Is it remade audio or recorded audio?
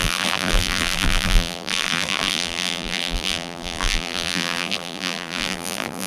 remade